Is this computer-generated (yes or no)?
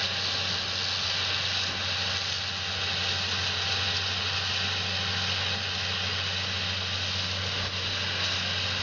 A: no